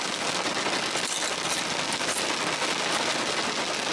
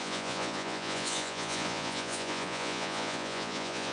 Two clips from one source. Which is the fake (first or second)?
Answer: second